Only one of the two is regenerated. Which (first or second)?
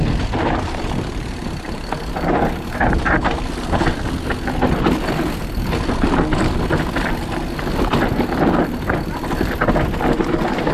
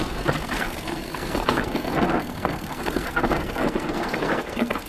second